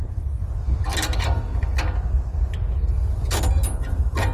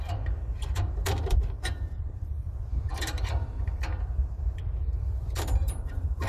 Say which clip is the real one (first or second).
first